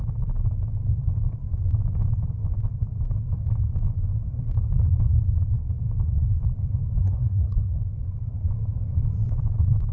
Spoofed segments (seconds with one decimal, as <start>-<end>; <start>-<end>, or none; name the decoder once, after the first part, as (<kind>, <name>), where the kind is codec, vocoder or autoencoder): 7.0-7.8 (codec, SNAC)